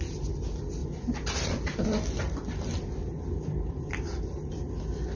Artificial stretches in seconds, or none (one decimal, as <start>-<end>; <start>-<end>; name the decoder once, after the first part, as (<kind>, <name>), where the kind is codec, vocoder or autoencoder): none